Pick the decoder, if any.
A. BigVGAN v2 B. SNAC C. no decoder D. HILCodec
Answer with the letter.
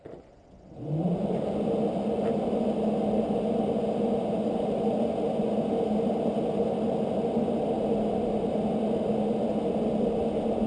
C